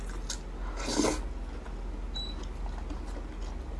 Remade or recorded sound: recorded